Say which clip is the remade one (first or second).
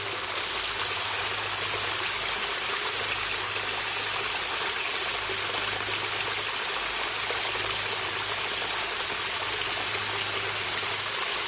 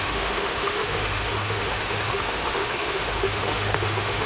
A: second